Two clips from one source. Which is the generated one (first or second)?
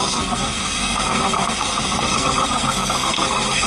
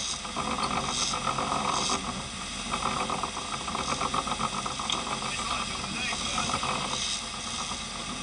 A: first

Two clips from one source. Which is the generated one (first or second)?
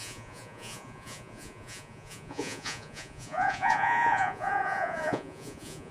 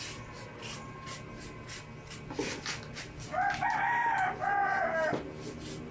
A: first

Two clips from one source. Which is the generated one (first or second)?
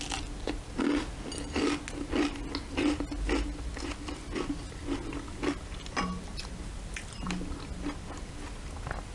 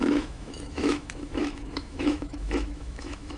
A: second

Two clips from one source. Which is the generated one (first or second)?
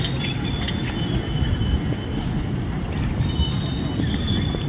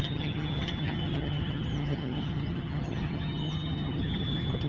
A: second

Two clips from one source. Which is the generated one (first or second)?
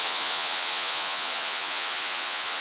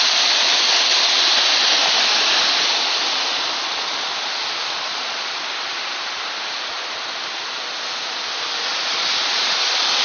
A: first